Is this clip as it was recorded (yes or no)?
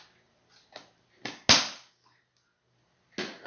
yes